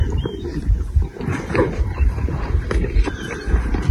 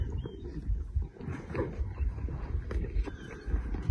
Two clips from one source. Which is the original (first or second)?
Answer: second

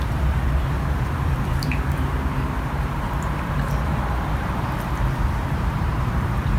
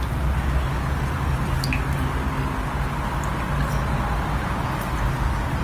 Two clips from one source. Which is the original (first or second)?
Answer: second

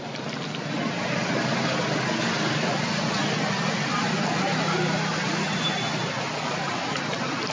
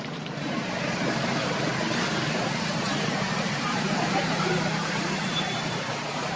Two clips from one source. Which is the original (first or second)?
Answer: first